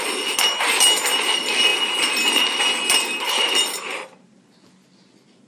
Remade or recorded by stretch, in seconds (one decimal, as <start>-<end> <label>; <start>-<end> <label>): 0.0-5.5 recorded

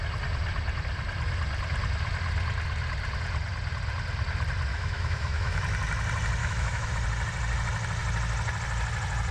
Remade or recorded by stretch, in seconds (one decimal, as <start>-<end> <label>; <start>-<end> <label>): 0.0-4.7 recorded; 4.7-5.6 remade; 5.6-6.4 recorded; 6.4-6.9 remade; 6.9-9.3 recorded